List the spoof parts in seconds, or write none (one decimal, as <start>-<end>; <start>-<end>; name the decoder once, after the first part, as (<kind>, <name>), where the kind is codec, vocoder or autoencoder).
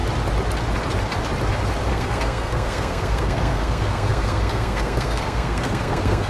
1.9-6.3 (codec, SNAC)